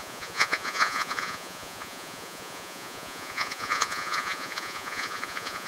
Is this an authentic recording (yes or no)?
no